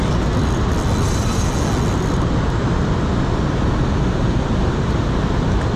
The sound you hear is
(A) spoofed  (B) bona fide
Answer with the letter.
B